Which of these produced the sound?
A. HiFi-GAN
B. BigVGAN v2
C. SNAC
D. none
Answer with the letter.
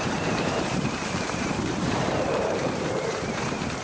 B